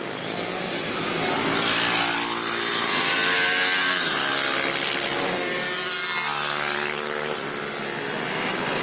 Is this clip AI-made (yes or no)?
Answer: no